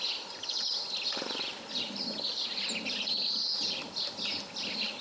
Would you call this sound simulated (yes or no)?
no